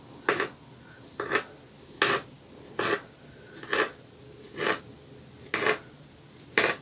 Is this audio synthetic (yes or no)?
no